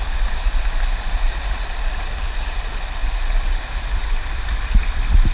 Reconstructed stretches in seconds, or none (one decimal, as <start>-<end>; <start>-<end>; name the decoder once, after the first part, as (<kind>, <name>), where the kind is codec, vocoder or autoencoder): 3.0-3.6 (vocoder, BigVGAN v2)

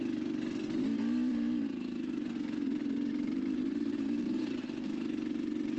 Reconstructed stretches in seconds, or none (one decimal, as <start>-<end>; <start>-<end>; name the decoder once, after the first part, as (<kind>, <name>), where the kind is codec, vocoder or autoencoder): 0.0-0.9 (vocoder, BigVGAN v2); 2.8-5.8

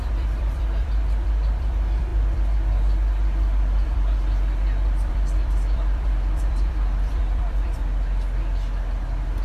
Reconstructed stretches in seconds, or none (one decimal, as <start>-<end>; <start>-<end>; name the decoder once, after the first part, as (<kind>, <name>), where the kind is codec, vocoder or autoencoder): 0.0-7.8 (vocoder, BigVGAN v2)

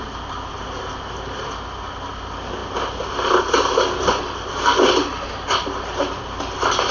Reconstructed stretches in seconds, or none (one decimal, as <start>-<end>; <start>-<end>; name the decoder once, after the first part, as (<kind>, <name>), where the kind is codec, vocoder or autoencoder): 0.0-2.6 (vocoder, BigVGAN v2); 4.2-6.9